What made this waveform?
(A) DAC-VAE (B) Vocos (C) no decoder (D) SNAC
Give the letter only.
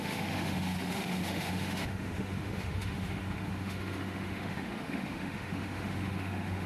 A